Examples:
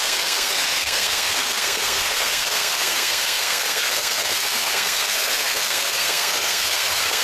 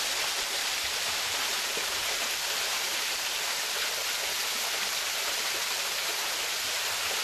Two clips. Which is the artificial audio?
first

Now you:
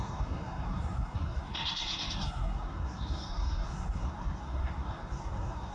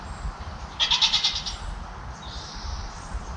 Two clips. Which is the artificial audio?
first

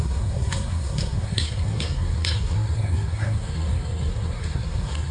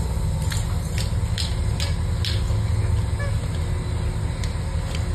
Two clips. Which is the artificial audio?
first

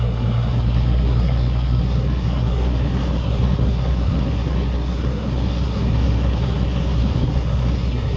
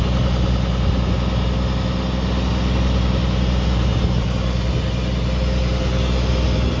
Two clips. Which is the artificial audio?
first